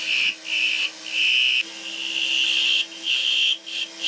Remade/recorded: recorded